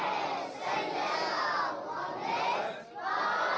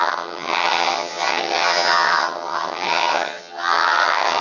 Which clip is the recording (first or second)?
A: first